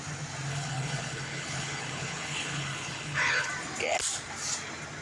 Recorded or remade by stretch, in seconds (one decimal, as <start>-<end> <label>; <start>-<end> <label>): 0.0-0.5 recorded; 0.5-3.5 remade; 3.5-5.0 recorded